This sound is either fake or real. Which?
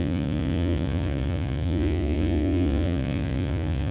fake